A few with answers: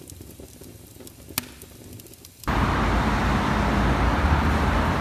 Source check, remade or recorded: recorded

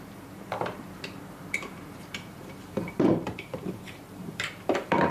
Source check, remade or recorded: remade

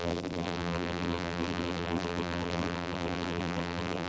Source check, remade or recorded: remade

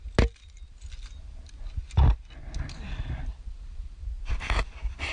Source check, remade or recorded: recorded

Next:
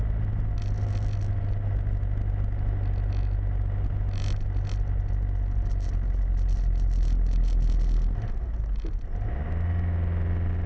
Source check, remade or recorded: recorded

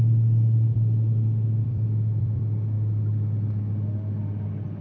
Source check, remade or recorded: remade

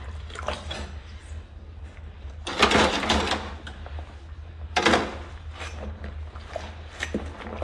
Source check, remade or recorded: recorded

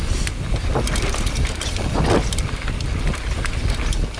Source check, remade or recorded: remade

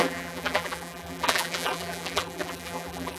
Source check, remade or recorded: remade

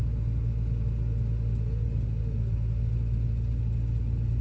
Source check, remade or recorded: recorded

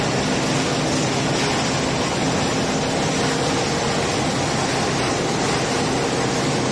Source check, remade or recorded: recorded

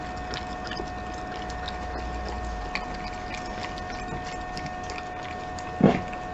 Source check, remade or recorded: recorded